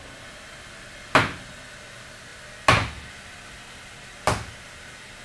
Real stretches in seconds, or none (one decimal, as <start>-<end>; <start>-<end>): 0.0-5.2